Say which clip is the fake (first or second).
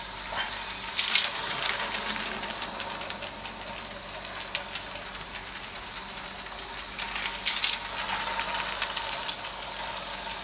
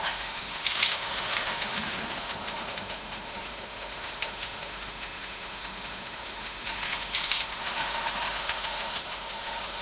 second